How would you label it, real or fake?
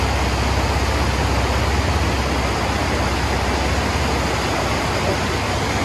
real